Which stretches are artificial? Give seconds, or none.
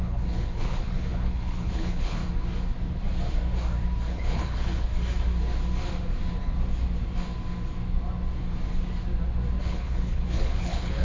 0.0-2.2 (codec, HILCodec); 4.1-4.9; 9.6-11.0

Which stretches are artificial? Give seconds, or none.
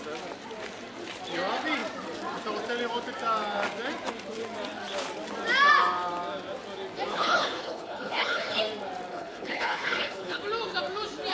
7.1-8.6 (codec, HILCodec); 9.1-10.4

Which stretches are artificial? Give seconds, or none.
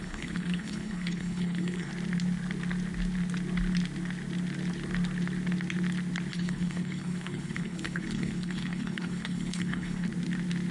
0.0-1.9 (codec, HILCodec); 6.3-10.1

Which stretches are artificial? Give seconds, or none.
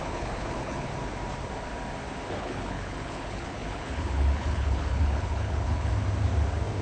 0.0-0.9 (codec, HILCodec); 2.4-5.9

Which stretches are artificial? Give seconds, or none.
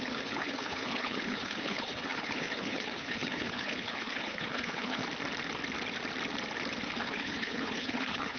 0.0-5.0 (codec, HILCodec); 7.0-8.4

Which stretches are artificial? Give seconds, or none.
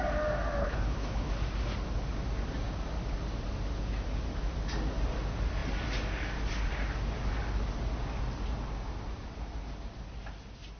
0.6-1.3 (codec, HILCodec)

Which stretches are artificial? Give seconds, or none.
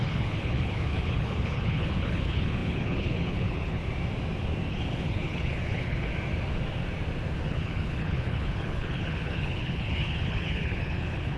0.0-3.8 (codec, HILCodec); 4.7-6.1; 7.4-11.4